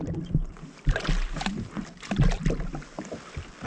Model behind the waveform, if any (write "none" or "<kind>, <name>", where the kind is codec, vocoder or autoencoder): none